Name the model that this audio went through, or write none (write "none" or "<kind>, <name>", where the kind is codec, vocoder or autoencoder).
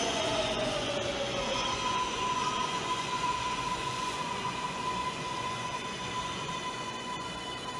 vocoder, Vocos